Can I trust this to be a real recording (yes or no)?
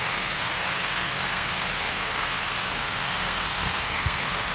no